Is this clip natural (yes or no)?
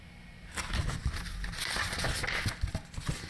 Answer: yes